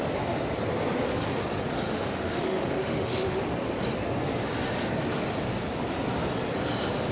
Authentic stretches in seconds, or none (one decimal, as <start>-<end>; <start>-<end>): 0.0-1.9; 3.4-7.1